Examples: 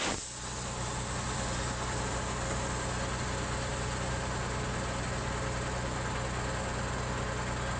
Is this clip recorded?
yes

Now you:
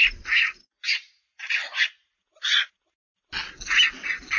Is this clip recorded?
yes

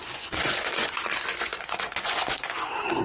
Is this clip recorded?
no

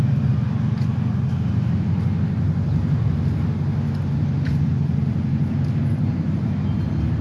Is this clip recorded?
yes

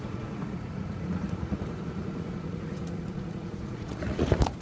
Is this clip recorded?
no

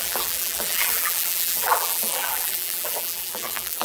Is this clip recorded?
no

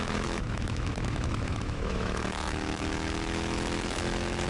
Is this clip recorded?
no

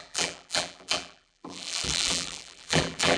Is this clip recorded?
no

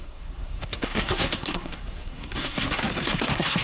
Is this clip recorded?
no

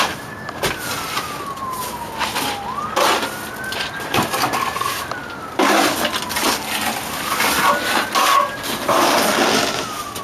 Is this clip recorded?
yes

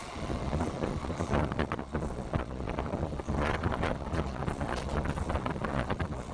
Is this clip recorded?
no